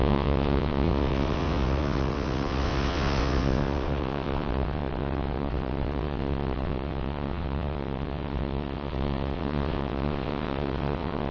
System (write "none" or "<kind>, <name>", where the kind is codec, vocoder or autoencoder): vocoder, WaveNeXt